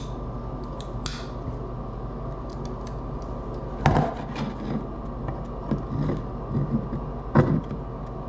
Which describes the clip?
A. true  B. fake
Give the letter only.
A